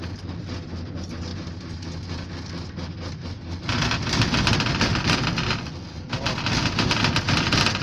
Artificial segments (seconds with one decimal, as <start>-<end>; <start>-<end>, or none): none